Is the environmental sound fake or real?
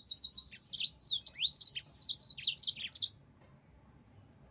real